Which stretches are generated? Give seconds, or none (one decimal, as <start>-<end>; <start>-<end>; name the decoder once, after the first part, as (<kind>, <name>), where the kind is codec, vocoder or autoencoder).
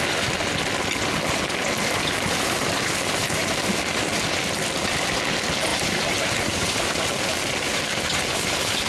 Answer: 5.7-6.8 (vocoder, BigVGAN v2)